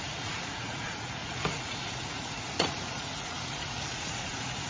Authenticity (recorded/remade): remade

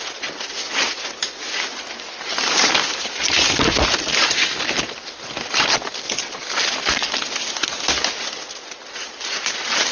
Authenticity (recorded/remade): recorded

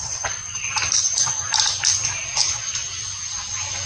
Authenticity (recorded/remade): recorded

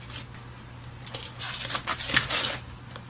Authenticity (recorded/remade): recorded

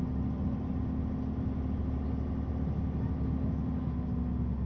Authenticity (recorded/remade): recorded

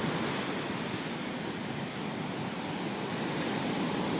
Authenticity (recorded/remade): recorded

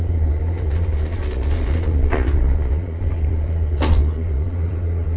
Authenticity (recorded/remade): remade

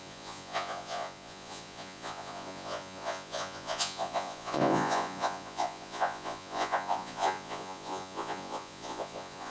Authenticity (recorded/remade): remade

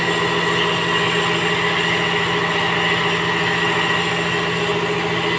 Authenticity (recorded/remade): recorded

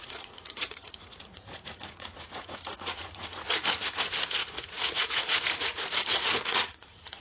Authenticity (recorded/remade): remade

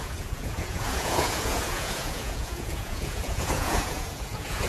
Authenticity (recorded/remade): remade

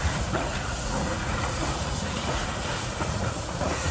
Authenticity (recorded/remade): remade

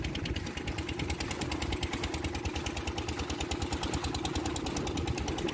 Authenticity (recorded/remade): recorded